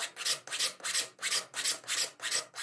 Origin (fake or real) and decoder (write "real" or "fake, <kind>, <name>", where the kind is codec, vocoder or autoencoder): real